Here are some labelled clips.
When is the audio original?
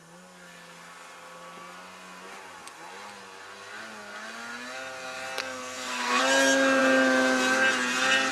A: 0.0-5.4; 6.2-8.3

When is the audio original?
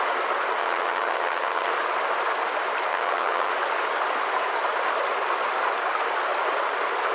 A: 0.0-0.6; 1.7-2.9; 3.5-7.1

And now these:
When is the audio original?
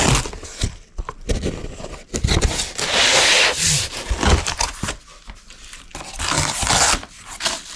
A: 0.0-7.8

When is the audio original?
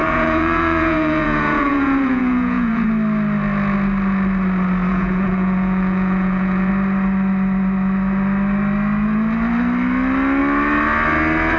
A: 2.9-4.9; 6.7-11.6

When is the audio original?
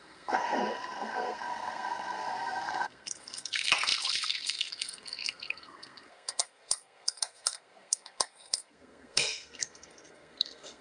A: none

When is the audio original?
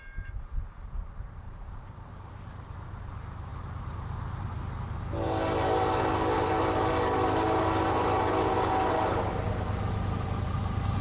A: 0.0-11.0